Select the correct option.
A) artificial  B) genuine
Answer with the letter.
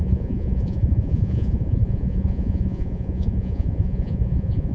A